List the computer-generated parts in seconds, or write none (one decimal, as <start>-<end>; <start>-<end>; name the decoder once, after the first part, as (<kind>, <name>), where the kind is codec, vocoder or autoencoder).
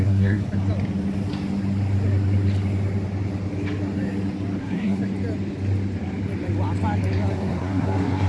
0.0-0.4 (codec, SNAC); 4.6-5.0; 7.3-8.3